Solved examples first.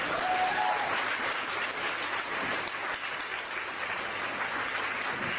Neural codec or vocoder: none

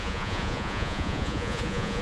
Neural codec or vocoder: vocoder, Vocos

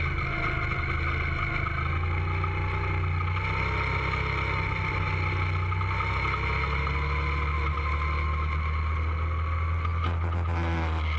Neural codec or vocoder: none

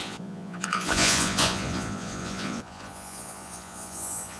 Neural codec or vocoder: vocoder, Vocos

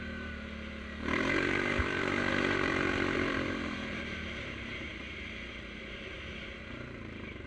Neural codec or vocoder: vocoder, BigVGAN v2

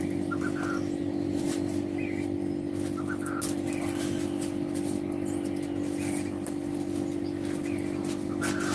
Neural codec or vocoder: none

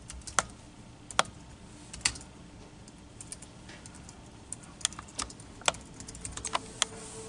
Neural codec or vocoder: none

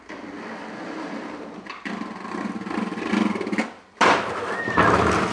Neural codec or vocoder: none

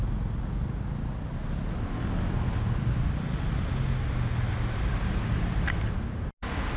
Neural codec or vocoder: none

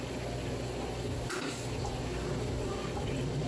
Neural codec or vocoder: none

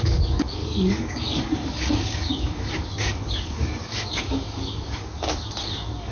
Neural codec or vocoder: codec, DAC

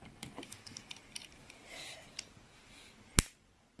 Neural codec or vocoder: none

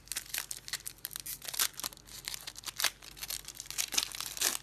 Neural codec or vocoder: none